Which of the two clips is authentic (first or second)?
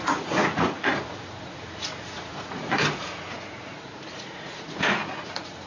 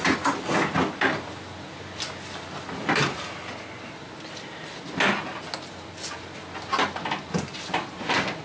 second